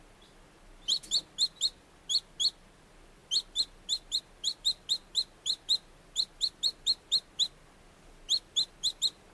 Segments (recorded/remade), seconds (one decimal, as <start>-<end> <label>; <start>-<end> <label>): 0.0-9.3 recorded